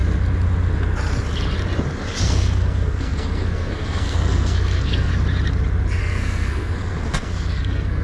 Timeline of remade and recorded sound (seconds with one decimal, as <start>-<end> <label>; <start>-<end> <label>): 0.0-2.2 recorded; 2.2-5.1 remade; 5.1-6.0 recorded; 6.0-8.0 remade